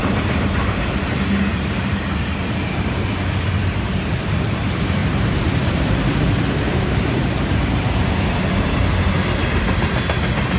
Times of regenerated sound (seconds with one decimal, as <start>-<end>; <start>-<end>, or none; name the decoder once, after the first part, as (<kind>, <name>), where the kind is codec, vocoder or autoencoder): 0.0-1.0 (vocoder, BigVGAN v2); 1.5-2.0; 5.0-8.1